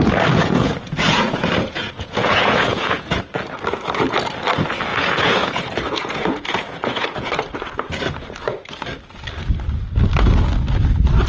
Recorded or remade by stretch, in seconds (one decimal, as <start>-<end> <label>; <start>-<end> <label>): 0.0-0.4 recorded; 0.4-3.2 remade; 3.2-4.9 recorded; 4.9-7.3 remade; 7.3-11.3 recorded

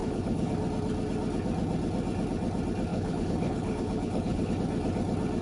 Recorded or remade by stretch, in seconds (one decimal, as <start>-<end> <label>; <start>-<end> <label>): 0.0-0.5 remade; 0.5-2.9 recorded; 2.9-4.5 remade; 4.5-5.4 recorded

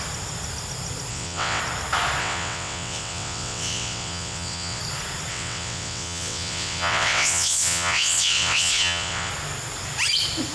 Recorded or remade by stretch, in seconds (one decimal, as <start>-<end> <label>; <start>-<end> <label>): 0.0-1.1 recorded; 1.1-1.6 remade; 1.6-2.2 recorded; 2.2-4.8 remade; 4.8-5.3 recorded; 5.3-9.3 remade; 9.3-10.5 recorded